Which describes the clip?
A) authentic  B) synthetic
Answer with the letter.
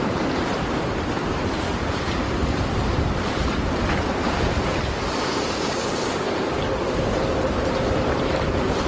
B